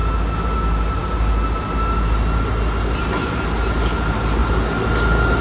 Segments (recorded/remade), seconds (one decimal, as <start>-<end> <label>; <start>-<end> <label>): 0.0-5.4 recorded